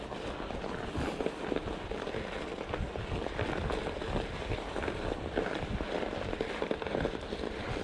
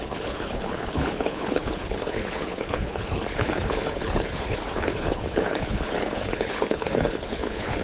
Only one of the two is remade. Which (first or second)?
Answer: second